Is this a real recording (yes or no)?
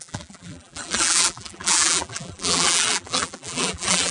no